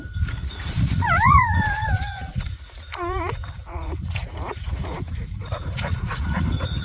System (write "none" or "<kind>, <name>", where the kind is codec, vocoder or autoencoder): vocoder, Vocos